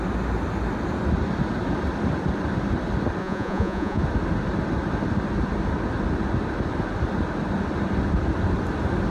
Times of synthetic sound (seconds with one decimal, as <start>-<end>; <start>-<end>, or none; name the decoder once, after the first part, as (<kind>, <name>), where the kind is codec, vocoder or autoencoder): 3.2-4.0 (vocoder, Vocos)